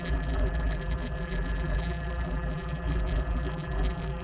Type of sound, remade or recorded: remade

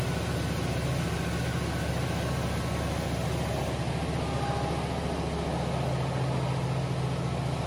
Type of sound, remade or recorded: recorded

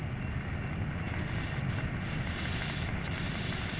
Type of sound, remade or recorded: recorded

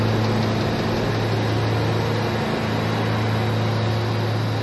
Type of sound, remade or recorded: recorded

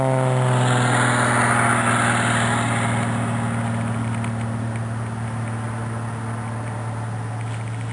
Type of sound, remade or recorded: recorded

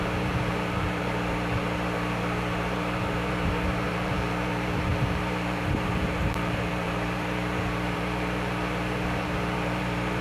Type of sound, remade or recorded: remade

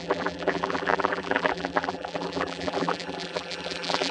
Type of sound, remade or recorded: remade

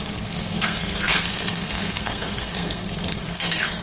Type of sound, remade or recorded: remade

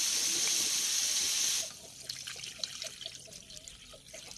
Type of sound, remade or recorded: recorded